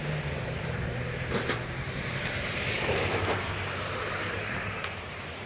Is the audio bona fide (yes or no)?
no